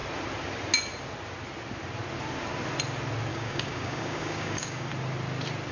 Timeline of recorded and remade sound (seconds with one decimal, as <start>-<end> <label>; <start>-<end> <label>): 0.0-3.3 recorded; 3.3-4.9 remade; 4.9-5.7 recorded